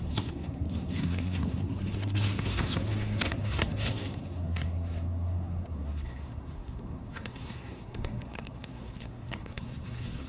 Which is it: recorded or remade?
remade